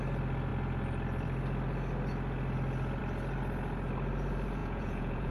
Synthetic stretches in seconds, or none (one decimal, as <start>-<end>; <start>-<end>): 4.6-5.3